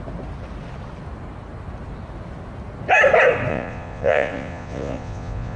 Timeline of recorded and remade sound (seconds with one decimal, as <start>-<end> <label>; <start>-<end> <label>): 0.0-3.5 recorded; 3.5-5.6 remade